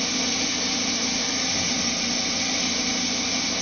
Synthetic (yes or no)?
no